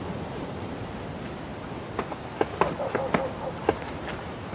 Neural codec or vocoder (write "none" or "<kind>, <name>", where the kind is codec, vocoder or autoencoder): none